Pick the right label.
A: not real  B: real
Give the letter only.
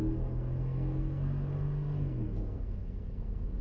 A